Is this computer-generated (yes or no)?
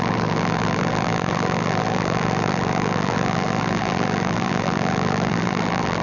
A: yes